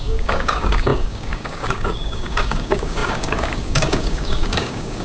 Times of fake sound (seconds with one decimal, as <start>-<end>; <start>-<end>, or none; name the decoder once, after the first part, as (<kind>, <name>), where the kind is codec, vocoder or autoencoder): 0.0-5.0 (codec, DAC)